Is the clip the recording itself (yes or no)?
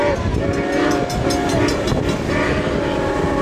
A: yes